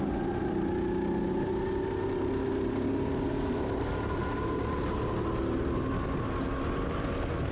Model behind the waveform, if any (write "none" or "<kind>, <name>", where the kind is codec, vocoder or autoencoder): none